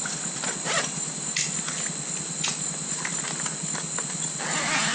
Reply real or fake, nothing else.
real